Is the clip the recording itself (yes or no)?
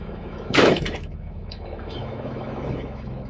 no